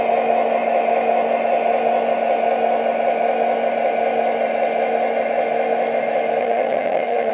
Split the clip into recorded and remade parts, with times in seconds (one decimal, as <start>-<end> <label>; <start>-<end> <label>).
0.0-6.4 recorded; 6.4-7.3 remade